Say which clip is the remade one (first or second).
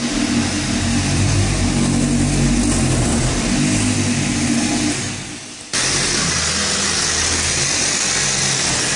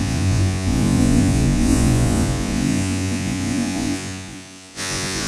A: second